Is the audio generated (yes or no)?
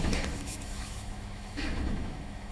yes